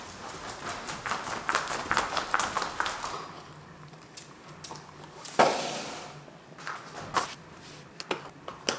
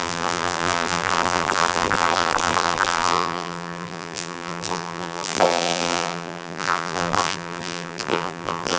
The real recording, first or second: first